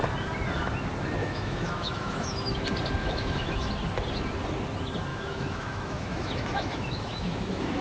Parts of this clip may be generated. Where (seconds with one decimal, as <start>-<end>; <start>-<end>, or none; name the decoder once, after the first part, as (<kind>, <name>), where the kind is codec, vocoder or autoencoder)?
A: 1.2-2.6 (autoencoder, DAC-VAE); 3.0-3.7; 5.1-7.8